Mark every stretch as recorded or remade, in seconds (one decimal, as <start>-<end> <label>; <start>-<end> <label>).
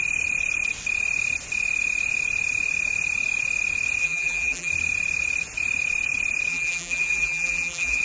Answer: 0.0-4.0 recorded; 4.0-4.7 remade; 4.7-6.5 recorded; 6.5-8.0 remade